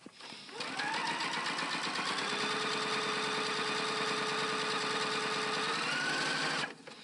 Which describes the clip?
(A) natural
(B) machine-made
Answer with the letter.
A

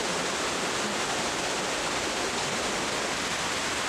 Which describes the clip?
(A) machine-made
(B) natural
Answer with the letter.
B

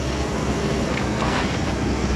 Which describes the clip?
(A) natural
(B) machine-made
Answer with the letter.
B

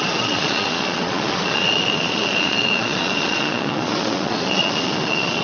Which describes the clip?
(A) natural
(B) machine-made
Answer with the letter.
B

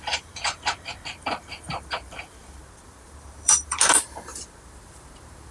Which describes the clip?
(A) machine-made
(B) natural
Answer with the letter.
A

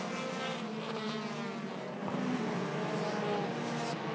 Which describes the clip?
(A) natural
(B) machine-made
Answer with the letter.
A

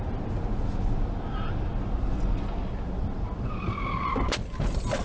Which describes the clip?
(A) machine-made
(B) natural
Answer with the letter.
B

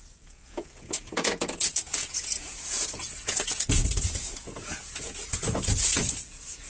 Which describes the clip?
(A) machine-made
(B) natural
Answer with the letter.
A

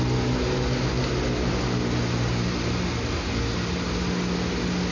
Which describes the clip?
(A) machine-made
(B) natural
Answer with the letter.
B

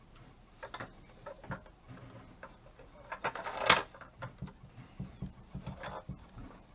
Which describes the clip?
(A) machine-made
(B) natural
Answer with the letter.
B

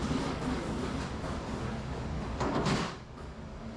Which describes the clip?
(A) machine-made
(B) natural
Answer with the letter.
A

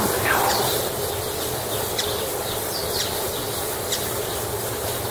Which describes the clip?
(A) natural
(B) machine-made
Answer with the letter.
A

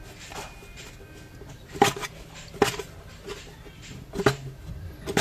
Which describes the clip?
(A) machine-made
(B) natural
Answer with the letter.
B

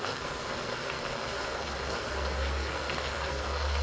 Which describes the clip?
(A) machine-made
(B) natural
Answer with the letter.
A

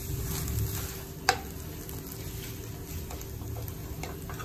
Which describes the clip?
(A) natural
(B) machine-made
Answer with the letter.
A